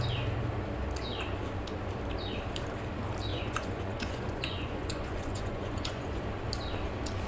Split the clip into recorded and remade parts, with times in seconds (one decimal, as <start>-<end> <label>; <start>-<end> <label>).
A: 0.0-3.3 recorded; 3.3-6.2 remade; 6.2-7.3 recorded